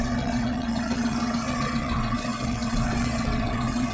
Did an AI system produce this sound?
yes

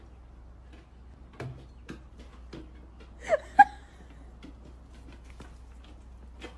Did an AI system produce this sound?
no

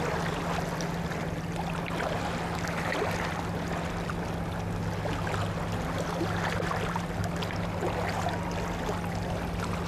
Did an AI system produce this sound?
no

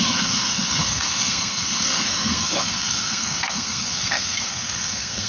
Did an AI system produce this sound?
yes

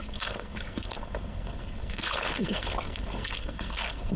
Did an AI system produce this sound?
yes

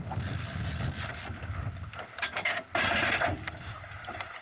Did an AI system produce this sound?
no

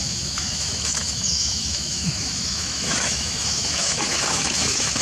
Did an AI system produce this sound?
yes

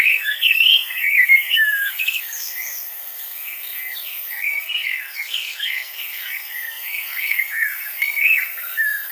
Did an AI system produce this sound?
yes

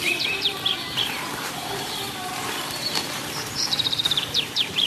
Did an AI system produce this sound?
yes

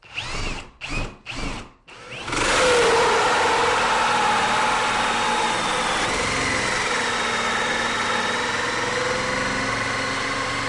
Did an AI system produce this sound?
no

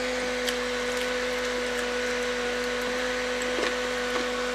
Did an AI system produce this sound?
no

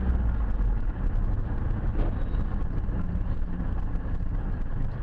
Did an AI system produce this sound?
no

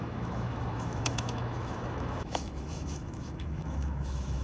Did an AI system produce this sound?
yes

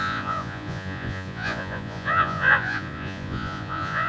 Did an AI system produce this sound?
yes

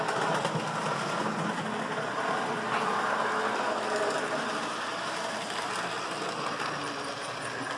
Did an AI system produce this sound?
no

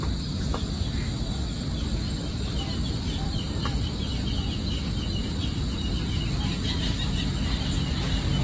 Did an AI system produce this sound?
no